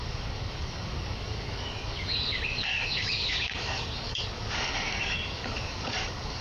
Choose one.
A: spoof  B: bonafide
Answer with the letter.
A